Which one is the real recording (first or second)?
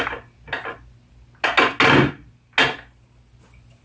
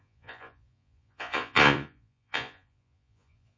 first